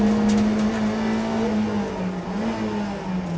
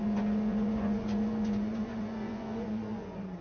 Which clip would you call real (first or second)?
first